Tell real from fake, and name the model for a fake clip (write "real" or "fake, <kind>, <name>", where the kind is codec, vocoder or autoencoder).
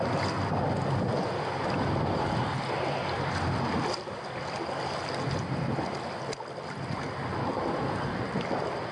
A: real